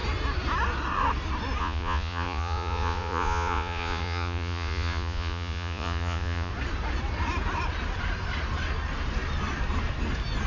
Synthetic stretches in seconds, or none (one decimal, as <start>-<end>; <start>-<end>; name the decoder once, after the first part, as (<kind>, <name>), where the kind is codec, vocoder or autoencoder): 1.6-6.5 (vocoder, Vocos)